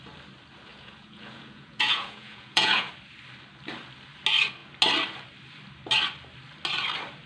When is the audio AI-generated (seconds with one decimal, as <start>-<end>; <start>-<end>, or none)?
0.7-2.9